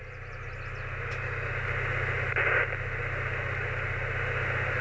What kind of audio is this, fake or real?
real